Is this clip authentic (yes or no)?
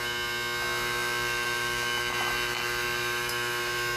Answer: no